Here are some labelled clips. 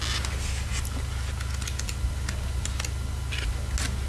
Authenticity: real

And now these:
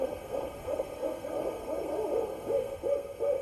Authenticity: fake